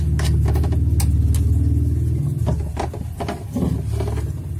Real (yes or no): yes